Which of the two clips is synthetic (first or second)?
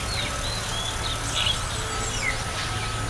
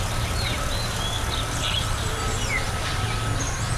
second